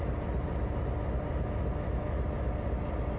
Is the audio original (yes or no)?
yes